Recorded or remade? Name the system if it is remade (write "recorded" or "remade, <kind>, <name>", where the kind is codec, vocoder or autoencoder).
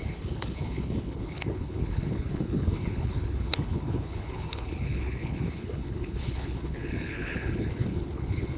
remade, codec, HILCodec